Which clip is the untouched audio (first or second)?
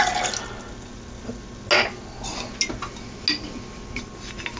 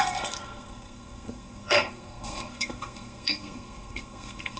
first